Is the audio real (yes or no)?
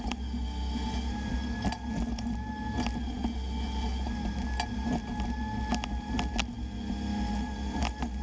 yes